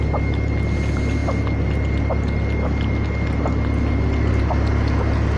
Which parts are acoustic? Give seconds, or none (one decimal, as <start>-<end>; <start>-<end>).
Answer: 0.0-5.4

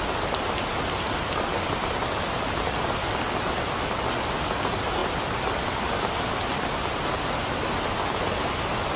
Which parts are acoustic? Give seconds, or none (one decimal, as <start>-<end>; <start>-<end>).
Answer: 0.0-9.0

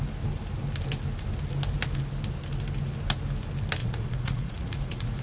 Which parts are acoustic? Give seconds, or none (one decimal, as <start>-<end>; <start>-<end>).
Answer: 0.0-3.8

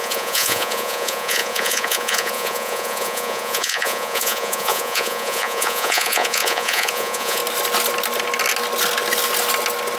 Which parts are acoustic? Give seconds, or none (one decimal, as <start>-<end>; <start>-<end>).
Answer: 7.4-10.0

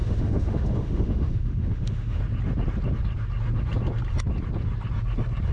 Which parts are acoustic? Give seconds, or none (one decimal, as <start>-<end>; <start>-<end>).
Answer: 2.2-5.5